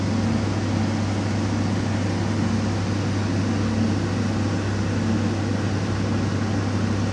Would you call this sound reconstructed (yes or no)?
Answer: no